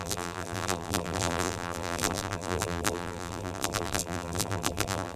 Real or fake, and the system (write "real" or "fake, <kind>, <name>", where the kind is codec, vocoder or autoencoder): fake, vocoder, BigVGAN v2